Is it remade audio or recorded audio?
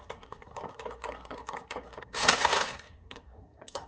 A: remade